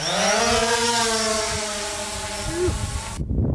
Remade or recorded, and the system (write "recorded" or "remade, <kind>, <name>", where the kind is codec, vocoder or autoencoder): recorded